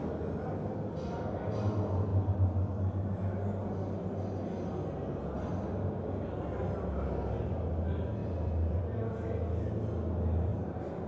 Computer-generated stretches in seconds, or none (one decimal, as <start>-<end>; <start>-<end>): 8.2-8.8; 10.5-11.1

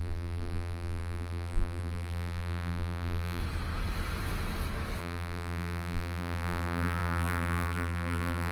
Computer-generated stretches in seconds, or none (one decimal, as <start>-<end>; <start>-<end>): 0.0-3.4; 5.0-8.5

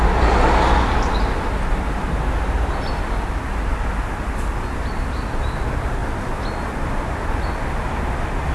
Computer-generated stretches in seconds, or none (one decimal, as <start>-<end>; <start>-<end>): none

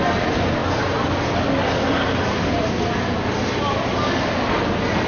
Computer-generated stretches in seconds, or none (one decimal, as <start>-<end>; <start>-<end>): none

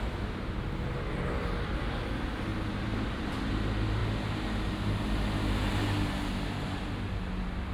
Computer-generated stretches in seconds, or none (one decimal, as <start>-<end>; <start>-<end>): 2.5-3.2

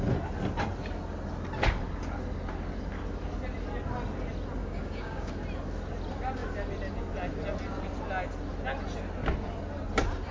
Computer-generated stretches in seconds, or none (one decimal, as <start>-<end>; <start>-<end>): 4.6-5.3

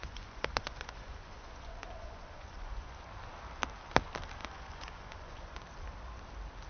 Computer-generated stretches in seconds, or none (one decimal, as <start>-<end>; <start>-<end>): 0.0-3.0; 4.4-5.6